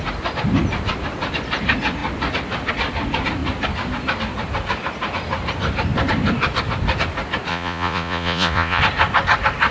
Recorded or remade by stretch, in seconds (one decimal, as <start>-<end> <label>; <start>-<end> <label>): 0.0-7.5 recorded; 7.5-8.8 remade; 8.8-9.7 recorded